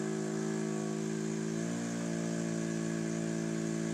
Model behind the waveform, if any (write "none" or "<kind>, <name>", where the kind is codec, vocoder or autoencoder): none